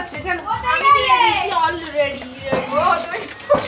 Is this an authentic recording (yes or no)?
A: yes